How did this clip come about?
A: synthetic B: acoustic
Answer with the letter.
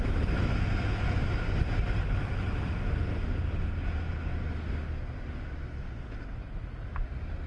B